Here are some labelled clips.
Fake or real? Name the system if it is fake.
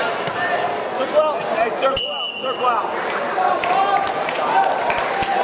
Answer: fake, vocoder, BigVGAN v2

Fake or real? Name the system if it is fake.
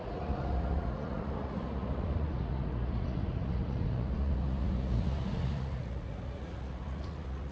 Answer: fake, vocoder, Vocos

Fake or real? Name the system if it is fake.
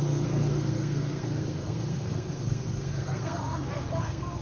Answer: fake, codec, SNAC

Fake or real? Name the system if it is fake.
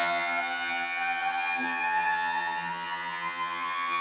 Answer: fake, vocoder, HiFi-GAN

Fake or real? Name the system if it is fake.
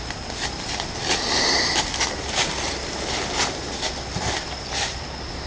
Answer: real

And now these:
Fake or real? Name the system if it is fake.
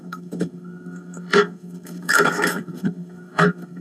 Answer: fake, codec, SNAC